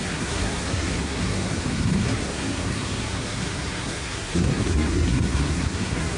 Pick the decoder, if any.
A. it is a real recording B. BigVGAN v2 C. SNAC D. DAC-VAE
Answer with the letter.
C